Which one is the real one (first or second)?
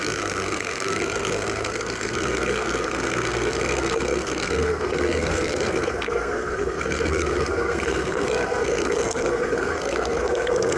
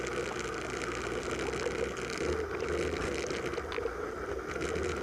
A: second